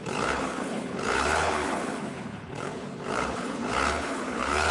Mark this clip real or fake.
fake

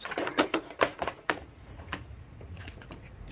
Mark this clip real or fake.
fake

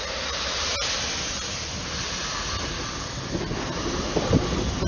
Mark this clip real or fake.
real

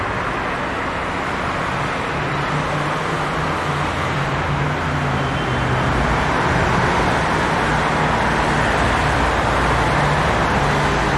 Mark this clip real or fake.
real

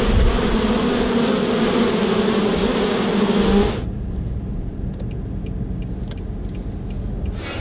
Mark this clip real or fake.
real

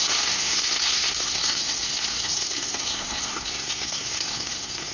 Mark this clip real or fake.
fake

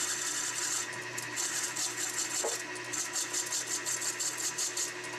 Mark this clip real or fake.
real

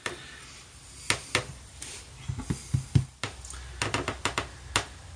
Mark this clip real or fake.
real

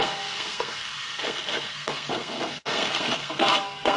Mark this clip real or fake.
fake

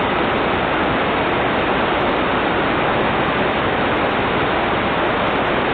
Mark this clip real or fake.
real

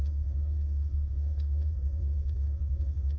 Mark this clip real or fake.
fake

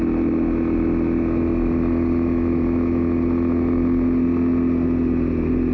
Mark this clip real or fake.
real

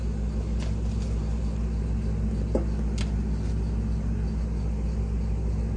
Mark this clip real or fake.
real